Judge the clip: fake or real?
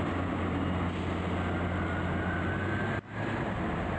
real